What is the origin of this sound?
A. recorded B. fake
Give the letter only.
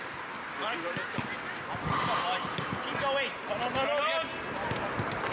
A